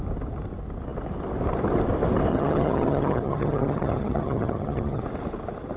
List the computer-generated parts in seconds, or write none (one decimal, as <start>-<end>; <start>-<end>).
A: 2.3-5.0